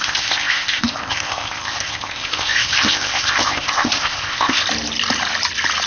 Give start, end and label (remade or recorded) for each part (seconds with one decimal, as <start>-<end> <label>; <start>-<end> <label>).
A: 0.0-4.6 remade; 4.6-5.9 recorded